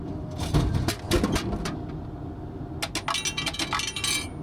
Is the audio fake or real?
real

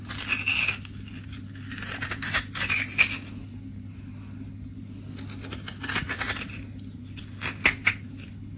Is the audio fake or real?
real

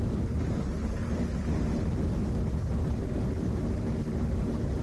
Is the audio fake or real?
fake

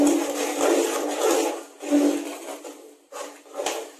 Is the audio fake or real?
real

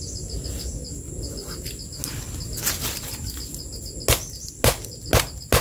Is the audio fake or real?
real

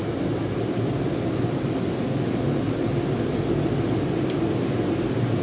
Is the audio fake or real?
real